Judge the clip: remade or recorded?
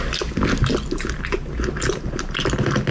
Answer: recorded